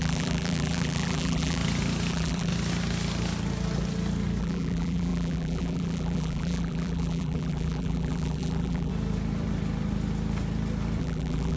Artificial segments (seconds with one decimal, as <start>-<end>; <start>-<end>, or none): 0.0-1.6; 2.1-2.5; 4.4-8.9; 11.0-11.6